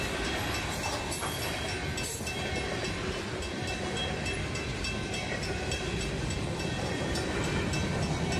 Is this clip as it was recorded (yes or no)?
yes